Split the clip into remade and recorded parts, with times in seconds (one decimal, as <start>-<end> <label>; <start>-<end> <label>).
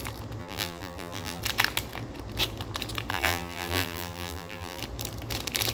0.0-0.4 recorded; 0.4-1.4 remade; 1.4-3.1 recorded; 3.1-4.8 remade; 4.8-5.7 recorded